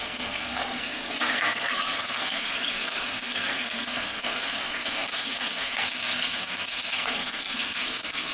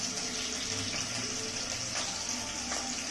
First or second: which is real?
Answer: second